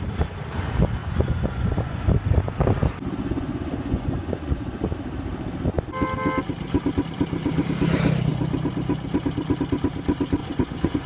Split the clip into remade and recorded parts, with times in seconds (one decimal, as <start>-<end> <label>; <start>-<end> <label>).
0.0-1.0 recorded; 1.0-2.0 remade; 2.0-3.2 recorded; 3.2-4.8 remade; 4.8-10.4 recorded; 10.4-11.1 remade